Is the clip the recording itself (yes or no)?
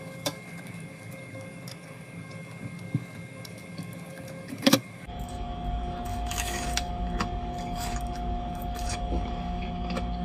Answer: no